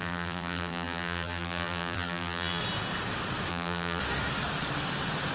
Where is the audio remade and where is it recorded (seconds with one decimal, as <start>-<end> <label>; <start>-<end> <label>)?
0.0-2.6 remade; 2.6-3.5 recorded; 3.5-4.0 remade; 4.0-5.3 recorded

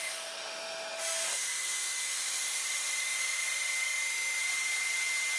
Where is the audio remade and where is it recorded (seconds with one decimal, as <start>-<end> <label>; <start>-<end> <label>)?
0.0-4.4 remade; 4.4-5.4 recorded

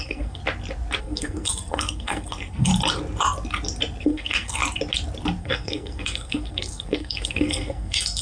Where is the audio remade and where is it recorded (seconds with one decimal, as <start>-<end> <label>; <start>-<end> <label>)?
0.0-0.4 remade; 0.4-1.0 recorded; 1.0-2.7 remade; 2.7-4.0 recorded; 4.0-4.6 remade; 4.6-5.4 recorded; 5.4-8.2 remade

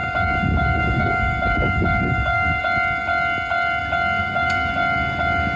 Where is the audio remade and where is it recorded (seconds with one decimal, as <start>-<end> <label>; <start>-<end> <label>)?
0.0-2.6 remade; 2.6-4.2 recorded; 4.2-4.7 remade; 4.7-5.6 recorded